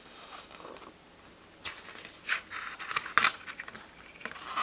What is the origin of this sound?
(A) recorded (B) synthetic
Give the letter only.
A